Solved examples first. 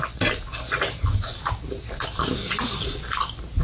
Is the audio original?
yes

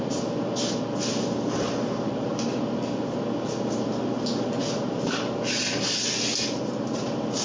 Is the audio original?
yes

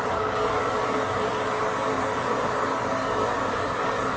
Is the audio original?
no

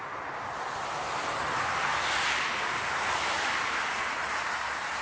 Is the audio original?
yes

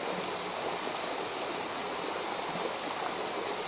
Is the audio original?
yes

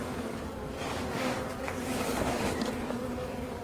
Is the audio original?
no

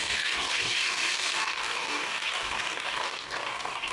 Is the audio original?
no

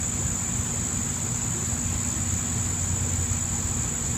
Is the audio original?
yes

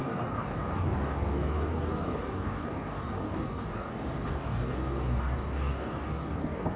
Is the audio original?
no